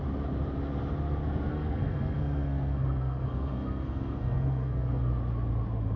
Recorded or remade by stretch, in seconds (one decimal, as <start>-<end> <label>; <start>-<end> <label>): 0.0-1.5 recorded; 1.5-5.1 remade; 5.1-6.0 recorded